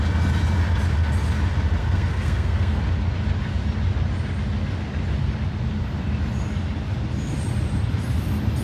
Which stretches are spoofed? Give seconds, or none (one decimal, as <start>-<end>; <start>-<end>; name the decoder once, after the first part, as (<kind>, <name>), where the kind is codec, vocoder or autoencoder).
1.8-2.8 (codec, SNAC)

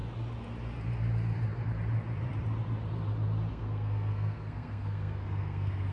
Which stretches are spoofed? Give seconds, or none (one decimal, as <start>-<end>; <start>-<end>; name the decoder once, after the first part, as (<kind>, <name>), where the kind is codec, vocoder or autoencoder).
3.5-5.9 (codec, SNAC)

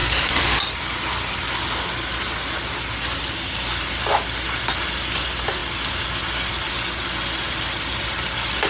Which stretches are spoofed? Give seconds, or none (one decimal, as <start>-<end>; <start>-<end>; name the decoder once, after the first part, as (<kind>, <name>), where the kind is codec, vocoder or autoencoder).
0.0-0.6 (codec, SNAC)

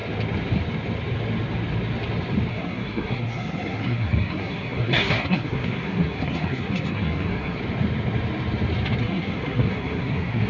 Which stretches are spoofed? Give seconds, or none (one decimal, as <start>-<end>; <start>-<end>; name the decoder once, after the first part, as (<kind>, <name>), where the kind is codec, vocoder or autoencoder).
2.5-7.6 (codec, SNAC); 9.0-10.5

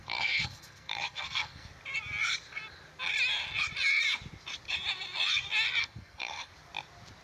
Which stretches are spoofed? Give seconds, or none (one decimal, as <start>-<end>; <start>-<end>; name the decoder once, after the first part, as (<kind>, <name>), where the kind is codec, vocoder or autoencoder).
0.0-1.7 (codec, SNAC); 5.8-6.5